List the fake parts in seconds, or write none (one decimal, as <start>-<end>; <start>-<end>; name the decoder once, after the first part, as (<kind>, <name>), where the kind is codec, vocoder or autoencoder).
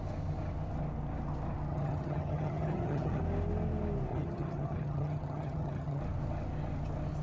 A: 1.7-3.2 (vocoder, HiFi-GAN); 4.1-6.0